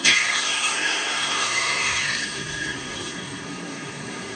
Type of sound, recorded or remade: remade